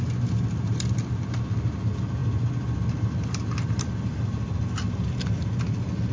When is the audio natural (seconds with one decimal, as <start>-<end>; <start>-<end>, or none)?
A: 0.0-6.1

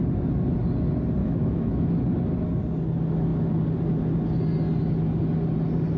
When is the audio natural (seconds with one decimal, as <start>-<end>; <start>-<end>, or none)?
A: 0.0-1.2; 1.8-6.0

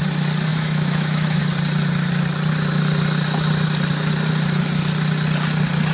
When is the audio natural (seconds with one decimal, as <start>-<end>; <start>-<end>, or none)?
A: 0.0-0.5; 1.4-5.9

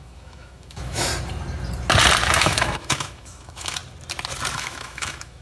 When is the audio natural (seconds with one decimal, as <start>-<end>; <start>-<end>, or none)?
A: 1.1-2.4; 3.8-4.5

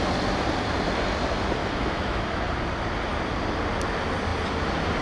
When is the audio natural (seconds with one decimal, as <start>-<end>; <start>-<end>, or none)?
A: 0.0-1.6; 2.2-5.0